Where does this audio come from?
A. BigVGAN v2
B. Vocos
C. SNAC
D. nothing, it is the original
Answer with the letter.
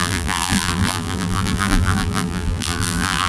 A